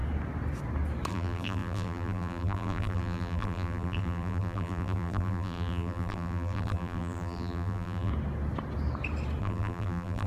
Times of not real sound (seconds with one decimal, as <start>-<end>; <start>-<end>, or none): 1.1-8.1; 9.4-10.3